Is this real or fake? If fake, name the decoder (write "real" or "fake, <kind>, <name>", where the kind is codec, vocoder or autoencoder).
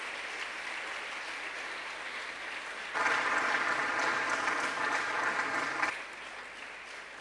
real